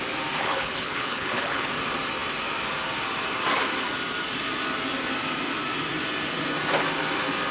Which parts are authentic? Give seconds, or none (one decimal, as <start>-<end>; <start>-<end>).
0.0-0.4; 1.7-7.5